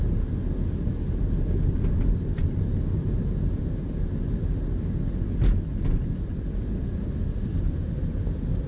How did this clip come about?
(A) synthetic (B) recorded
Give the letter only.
B